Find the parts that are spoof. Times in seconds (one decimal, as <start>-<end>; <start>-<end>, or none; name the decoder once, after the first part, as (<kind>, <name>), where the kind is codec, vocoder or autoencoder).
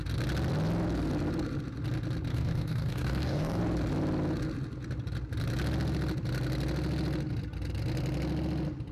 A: 2.3-3.6 (codec, DAC)